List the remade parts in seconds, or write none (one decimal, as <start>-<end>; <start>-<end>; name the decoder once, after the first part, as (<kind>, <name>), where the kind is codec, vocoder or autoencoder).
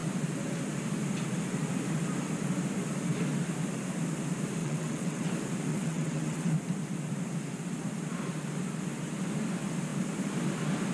4.6-5.3 (vocoder, WaveNeXt); 5.7-6.5